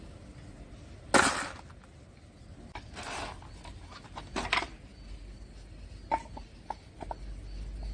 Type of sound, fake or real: real